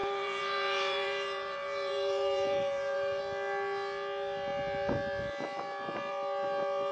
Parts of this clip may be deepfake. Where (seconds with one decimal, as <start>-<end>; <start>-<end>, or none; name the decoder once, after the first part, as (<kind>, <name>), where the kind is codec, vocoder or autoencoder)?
0.0-3.2 (vocoder, BigVGAN v2)